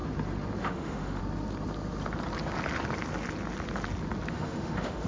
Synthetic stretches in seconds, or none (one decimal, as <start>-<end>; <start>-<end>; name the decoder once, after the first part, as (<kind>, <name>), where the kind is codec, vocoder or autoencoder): 0.6-1.2 (autoencoder, DAC-VAE); 4.3-5.1